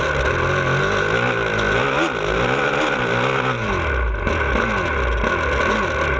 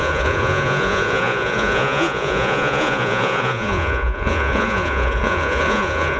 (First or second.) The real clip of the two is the first